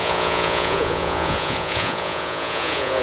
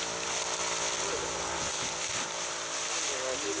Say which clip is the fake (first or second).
first